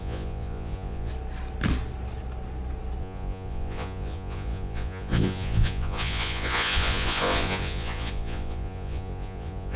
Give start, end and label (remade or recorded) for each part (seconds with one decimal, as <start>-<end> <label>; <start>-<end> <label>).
0.0-1.1 remade; 1.1-3.0 recorded; 3.0-9.8 remade